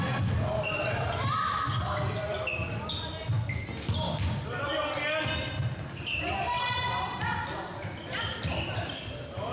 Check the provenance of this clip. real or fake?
real